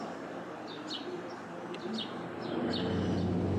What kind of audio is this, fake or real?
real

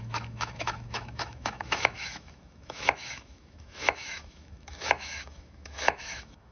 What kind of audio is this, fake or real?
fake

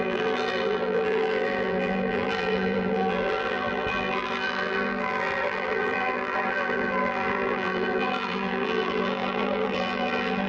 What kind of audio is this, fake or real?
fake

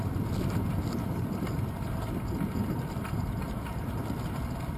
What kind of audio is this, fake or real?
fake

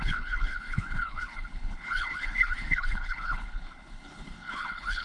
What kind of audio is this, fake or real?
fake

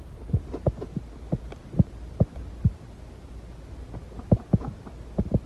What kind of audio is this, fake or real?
real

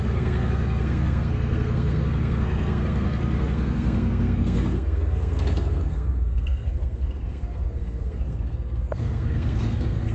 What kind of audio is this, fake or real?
fake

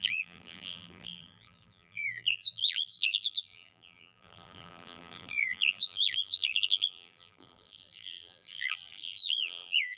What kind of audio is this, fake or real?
fake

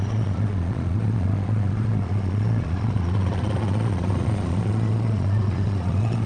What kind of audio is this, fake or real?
fake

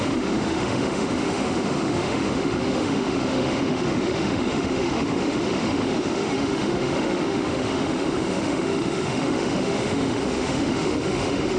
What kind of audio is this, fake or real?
fake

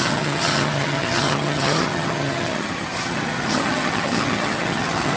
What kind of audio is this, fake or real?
fake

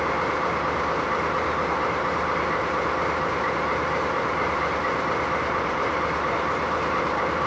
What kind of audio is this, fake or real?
real